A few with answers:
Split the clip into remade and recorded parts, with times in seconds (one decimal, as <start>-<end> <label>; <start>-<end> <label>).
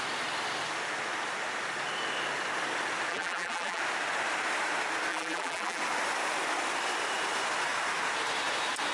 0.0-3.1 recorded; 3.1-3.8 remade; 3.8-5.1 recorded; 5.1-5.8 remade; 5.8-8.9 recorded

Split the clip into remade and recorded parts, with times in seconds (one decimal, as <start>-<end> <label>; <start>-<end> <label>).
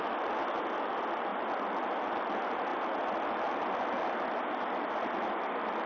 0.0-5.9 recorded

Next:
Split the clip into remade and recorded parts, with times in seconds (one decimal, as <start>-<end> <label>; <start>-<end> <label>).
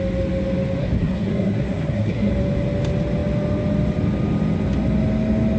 0.0-0.8 recorded; 0.8-2.3 remade; 2.3-5.6 recorded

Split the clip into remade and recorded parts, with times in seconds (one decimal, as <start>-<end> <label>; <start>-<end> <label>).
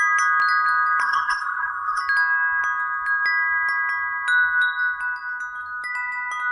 0.0-1.0 recorded; 1.0-2.0 remade; 2.0-6.5 recorded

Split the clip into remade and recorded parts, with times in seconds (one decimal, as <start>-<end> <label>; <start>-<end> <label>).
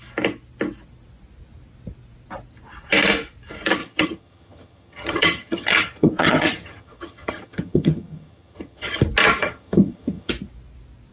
0.0-3.8 recorded; 3.8-9.0 remade; 9.0-9.4 recorded; 9.4-10.3 remade; 10.3-11.1 recorded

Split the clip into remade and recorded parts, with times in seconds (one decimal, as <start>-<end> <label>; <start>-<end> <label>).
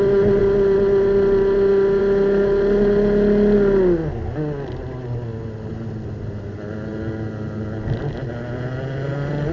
0.0-9.5 recorded